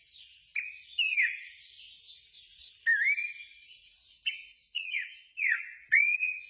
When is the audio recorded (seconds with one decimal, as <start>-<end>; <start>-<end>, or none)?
0.0-3.5